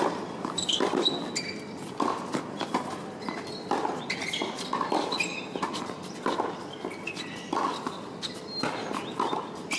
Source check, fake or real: real